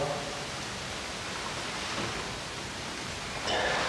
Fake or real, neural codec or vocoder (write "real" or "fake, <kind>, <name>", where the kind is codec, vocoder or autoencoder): real